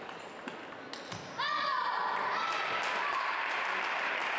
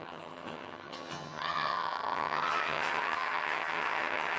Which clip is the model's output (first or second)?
second